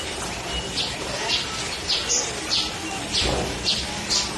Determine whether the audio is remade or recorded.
recorded